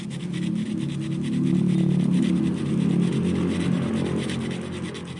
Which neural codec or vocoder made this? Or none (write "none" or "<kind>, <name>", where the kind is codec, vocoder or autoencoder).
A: none